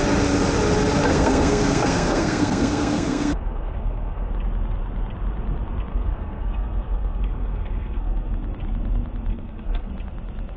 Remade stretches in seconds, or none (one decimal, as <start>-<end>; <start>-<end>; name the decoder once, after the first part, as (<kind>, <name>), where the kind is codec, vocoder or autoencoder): 1.1-4.3 (codec, SNAC); 5.9-8.3; 9.3-9.9